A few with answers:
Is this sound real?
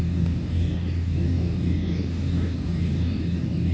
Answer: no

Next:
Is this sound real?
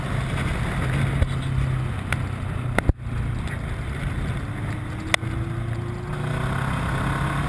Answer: yes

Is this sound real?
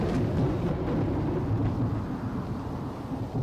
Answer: yes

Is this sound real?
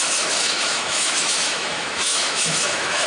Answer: no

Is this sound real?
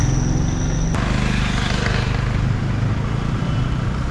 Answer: yes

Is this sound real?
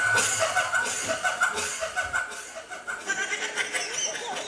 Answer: yes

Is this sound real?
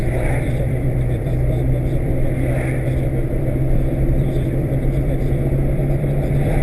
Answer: no